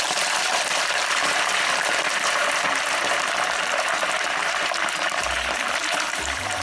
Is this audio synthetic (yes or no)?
yes